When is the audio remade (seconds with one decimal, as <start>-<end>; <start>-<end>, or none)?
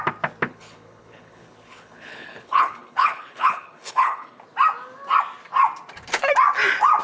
0.5-4.4